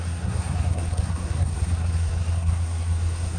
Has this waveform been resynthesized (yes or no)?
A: yes